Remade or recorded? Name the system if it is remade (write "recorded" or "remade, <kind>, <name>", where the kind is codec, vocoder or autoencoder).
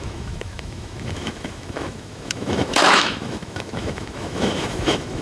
remade, autoencoder, DAC-VAE